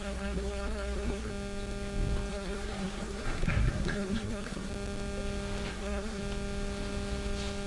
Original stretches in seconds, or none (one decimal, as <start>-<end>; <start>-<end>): 1.3-2.3; 4.7-5.7; 6.2-7.7

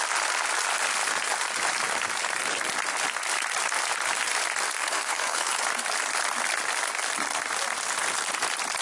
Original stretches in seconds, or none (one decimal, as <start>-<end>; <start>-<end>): 0.0-4.8; 5.6-8.8

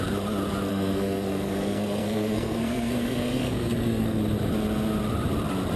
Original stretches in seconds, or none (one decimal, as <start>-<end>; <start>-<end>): 0.0-0.7; 4.2-5.8

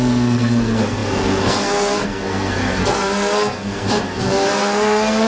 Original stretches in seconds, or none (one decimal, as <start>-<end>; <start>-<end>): none

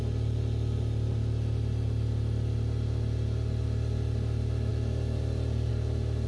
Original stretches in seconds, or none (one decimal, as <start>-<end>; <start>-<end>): 0.0-6.3

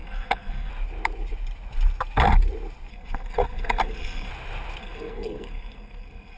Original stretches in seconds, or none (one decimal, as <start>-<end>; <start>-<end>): 0.7-2.9; 4.3-4.8

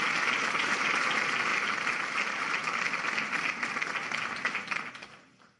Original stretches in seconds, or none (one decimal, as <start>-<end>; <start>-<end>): 0.0-5.6